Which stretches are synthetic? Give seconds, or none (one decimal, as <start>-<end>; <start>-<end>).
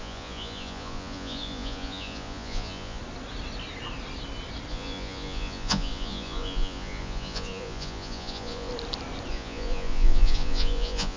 0.0-3.0; 4.7-8.7; 9.3-11.2